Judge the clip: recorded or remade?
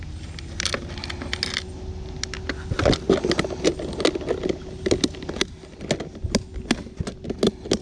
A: recorded